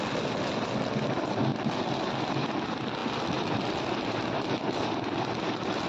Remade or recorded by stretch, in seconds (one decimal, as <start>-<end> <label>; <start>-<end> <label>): 0.0-5.9 recorded